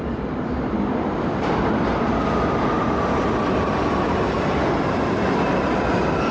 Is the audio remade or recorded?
recorded